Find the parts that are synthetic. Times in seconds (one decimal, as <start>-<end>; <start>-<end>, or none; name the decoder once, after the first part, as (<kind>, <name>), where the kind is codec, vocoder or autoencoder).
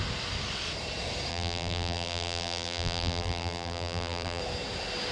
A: 1.3-4.4 (vocoder, BigVGAN v2)